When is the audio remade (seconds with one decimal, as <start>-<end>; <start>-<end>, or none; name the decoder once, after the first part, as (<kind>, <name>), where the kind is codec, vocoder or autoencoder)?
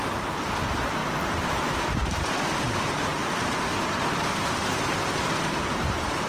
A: 0.0-3.1 (vocoder, BigVGAN v2); 4.0-6.3